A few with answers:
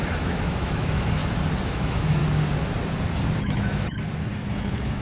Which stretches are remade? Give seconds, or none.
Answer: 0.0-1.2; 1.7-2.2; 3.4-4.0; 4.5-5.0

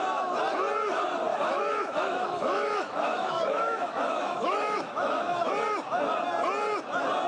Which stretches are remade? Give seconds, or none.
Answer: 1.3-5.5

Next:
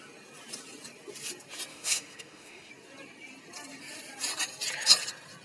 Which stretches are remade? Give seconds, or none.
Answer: 1.7-2.7

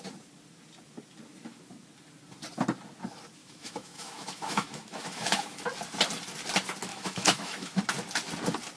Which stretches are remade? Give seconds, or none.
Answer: 3.4-5.6; 6.9-7.8